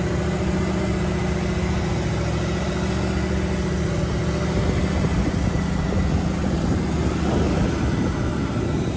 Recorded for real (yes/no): yes